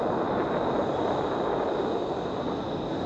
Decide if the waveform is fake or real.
real